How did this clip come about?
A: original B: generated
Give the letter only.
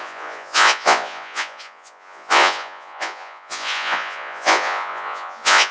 B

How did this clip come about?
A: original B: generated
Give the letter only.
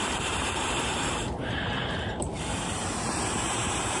B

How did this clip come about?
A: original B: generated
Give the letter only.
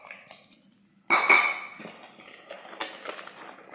A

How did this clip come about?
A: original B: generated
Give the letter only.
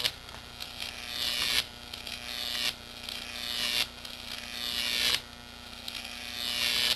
A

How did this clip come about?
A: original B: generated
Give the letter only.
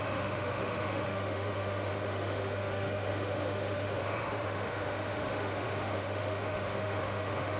B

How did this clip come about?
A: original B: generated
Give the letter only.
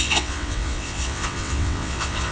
B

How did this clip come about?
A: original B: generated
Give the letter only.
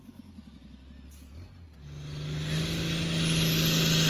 A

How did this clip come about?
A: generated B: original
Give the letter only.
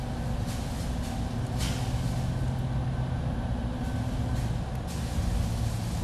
B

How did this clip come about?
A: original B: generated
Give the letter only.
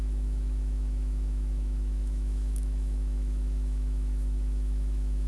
B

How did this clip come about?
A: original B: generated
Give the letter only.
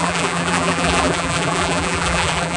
B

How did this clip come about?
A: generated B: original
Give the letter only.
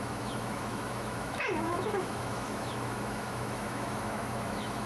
A